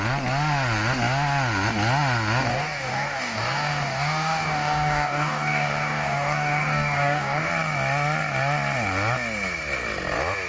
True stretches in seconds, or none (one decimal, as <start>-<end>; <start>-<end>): 0.0-2.5; 7.5-10.5